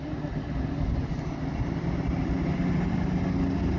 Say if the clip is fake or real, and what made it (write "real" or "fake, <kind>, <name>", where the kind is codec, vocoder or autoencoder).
real